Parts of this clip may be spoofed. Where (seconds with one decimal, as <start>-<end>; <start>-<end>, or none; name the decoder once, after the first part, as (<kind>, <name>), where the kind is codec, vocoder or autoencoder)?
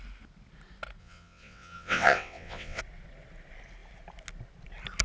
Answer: 1.0-2.8 (vocoder, WaveNeXt)